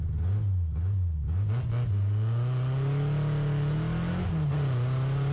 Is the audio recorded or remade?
recorded